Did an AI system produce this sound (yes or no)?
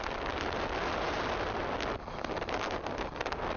no